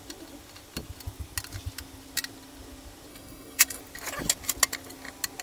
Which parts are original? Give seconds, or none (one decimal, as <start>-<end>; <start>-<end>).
0.0-3.1; 3.8-5.4